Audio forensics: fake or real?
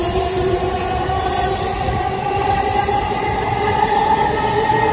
real